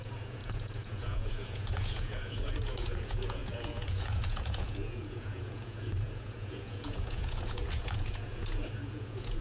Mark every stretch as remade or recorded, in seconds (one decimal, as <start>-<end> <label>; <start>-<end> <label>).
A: 0.0-9.4 remade